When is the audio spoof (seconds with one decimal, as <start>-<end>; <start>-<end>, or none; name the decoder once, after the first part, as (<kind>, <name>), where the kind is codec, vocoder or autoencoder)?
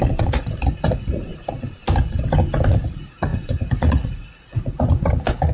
0.0-1.3 (vocoder, Vocos); 2.7-5.5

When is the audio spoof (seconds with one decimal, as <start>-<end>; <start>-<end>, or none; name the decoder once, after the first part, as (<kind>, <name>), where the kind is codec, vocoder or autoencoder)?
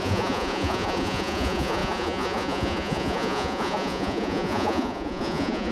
0.0-5.7 (vocoder, Vocos)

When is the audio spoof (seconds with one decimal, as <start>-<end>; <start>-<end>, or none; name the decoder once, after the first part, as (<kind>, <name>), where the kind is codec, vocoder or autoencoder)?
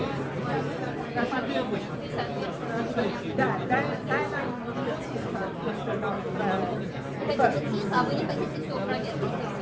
none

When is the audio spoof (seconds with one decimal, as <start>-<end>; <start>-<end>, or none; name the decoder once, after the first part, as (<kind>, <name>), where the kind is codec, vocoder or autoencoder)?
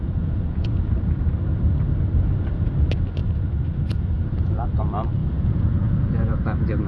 0.0-0.8 (vocoder, Vocos); 5.2-6.4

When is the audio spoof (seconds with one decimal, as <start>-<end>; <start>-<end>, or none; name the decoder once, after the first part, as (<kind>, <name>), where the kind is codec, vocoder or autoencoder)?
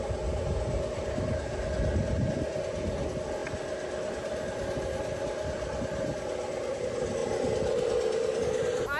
none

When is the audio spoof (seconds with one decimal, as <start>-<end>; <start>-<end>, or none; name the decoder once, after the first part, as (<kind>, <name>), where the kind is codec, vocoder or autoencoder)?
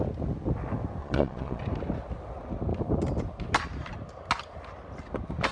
1.0-1.6 (vocoder, Vocos)